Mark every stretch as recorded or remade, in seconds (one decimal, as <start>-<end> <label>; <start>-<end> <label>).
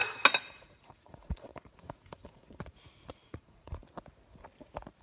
0.0-0.5 recorded; 0.5-3.8 remade; 3.8-5.0 recorded